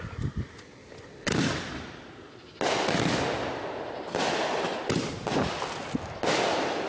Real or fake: real